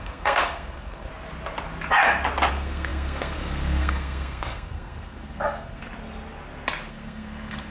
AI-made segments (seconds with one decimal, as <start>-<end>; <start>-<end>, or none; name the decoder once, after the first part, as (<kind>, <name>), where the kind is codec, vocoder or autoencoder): 0.0-1.1 (codec, SNAC); 2.5-5.9; 6.9-7.7